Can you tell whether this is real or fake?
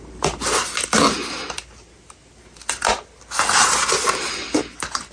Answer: real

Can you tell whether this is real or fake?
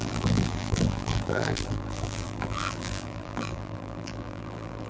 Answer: fake